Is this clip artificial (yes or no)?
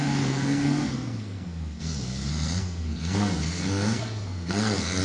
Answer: yes